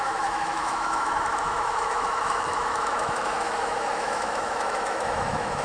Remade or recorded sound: remade